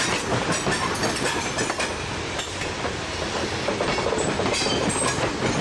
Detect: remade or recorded recorded